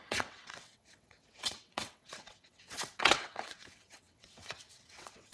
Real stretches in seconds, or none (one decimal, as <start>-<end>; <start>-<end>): none